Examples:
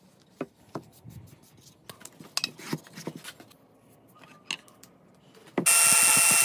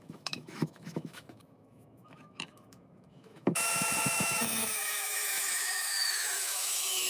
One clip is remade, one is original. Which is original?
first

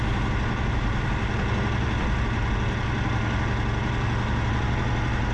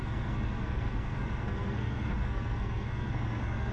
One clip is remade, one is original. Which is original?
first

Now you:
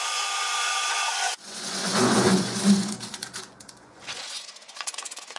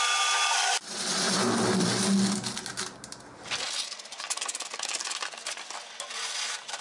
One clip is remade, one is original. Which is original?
second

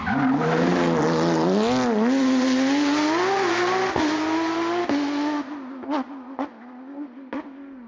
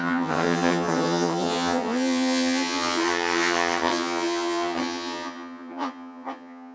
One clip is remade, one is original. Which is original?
first